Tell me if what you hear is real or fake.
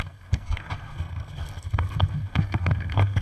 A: fake